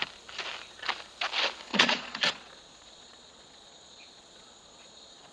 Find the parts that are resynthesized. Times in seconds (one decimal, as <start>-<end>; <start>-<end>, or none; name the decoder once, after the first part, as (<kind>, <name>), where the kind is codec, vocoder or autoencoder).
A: 1.7-5.3 (vocoder, Vocos)